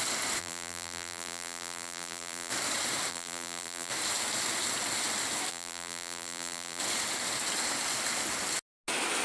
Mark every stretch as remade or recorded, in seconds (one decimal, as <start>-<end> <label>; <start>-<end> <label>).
0.0-0.4 recorded; 0.4-2.5 remade; 2.5-3.1 recorded; 3.1-3.9 remade; 3.9-5.5 recorded; 5.5-6.8 remade; 6.8-9.2 recorded